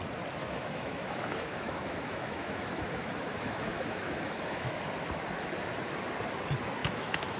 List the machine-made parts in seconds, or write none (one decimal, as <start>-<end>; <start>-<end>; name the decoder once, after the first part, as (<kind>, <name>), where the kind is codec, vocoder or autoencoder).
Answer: 0.4-4.8 (autoencoder, DAC-VAE); 6.8-7.4